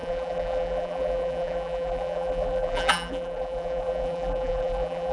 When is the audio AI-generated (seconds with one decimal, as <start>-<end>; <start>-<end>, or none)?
0.0-5.1